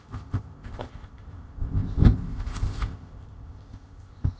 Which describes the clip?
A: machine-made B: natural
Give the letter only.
A